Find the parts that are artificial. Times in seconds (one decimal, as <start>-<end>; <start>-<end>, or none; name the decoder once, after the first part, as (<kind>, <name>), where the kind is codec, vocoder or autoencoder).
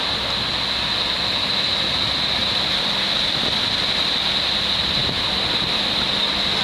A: none